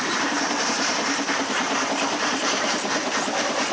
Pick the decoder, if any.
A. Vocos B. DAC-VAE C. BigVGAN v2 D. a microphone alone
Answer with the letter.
C